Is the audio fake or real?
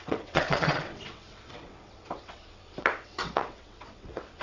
fake